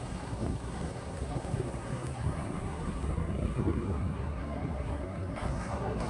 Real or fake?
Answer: fake